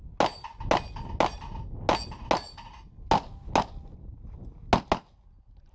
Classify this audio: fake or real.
real